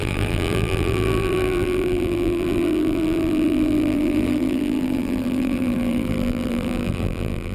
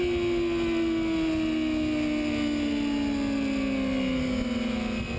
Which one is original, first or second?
second